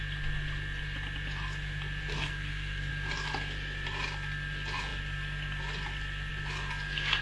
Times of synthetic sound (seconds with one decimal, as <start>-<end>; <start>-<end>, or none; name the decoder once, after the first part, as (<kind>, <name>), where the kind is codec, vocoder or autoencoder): 2.1-2.9 (codec, SNAC)